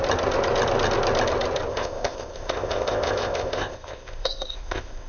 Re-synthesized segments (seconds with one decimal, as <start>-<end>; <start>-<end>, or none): 1.7-5.1